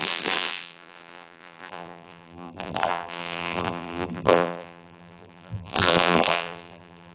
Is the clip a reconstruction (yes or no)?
yes